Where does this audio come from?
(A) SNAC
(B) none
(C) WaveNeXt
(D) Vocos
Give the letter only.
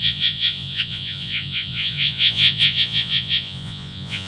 D